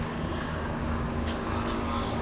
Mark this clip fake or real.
fake